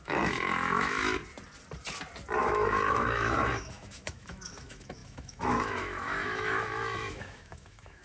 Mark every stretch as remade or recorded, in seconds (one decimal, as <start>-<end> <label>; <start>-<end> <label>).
0.0-1.2 remade; 1.2-2.4 recorded; 2.4-8.0 remade